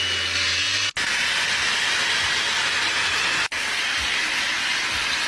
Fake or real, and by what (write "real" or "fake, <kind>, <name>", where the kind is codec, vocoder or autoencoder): real